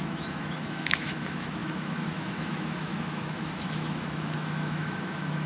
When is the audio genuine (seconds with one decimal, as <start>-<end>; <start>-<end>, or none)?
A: none